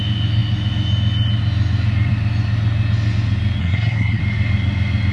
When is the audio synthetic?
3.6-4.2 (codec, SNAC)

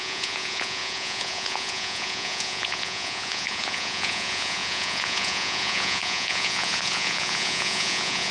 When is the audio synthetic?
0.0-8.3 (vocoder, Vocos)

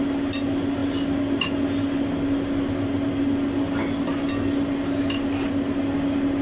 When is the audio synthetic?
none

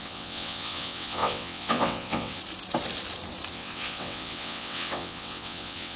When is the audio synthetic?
0.0-2.4 (vocoder, WaveNeXt); 3.5-6.0